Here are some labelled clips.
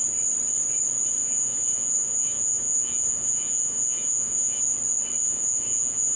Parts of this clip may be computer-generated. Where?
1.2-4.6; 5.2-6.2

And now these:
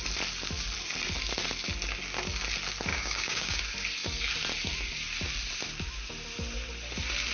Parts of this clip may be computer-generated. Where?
2.9-3.6

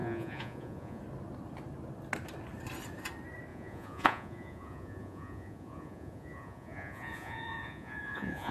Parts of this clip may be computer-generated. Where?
0.0-1.0; 3.5-8.5

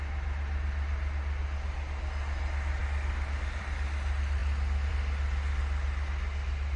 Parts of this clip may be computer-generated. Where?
none

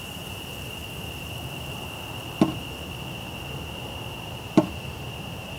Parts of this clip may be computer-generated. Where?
0.0-0.8; 4.2-5.6

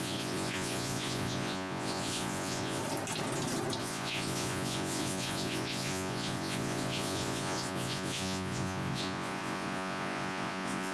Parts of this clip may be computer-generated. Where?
0.0-2.8; 3.8-10.9